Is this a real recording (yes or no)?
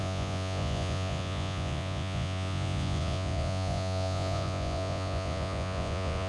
no